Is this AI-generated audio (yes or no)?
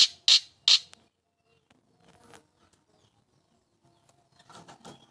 no